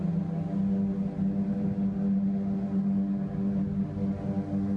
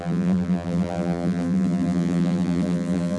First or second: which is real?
first